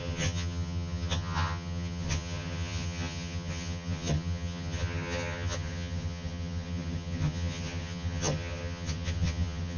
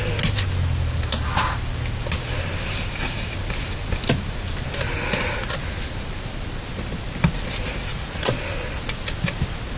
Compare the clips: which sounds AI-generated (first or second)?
first